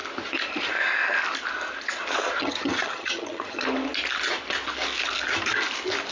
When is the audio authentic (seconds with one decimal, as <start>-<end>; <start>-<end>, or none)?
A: 0.0-2.4; 3.6-6.1

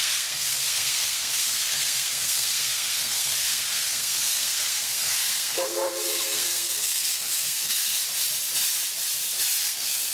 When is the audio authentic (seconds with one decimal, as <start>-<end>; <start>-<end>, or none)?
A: 8.0-9.6

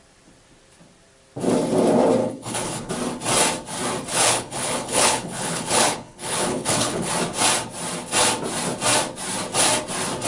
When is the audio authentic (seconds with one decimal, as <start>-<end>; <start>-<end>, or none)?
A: 0.0-2.2; 2.9-4.1; 7.1-10.3